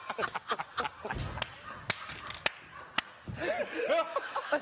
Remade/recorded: recorded